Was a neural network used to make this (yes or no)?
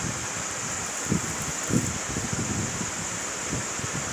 no